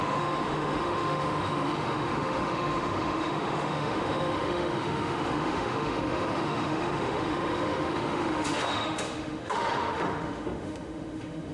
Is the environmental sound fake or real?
fake